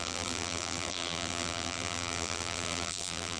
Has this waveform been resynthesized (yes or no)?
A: yes